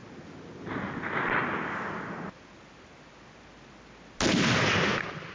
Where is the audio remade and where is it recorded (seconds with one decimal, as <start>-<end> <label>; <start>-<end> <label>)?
0.0-5.3 recorded